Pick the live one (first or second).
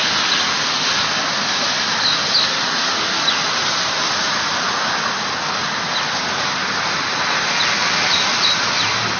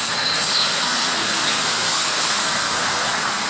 first